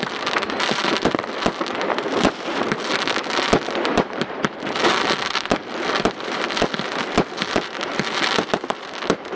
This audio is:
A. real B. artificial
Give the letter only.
B